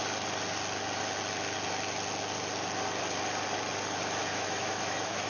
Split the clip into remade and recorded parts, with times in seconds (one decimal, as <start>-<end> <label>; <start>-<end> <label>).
0.0-4.3 recorded; 4.3-5.3 remade